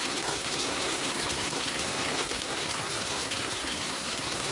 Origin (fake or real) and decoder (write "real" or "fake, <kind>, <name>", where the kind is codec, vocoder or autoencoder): fake, codec, SNAC